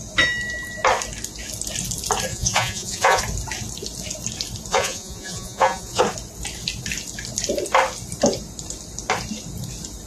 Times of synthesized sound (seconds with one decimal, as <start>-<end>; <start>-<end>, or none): 2.3-3.2; 4.7-6.0